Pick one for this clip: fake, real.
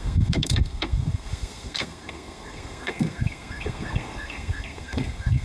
fake